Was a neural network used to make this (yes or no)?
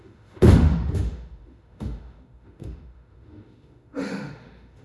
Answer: yes